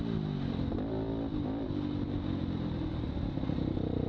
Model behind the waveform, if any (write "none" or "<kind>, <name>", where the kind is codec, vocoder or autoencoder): none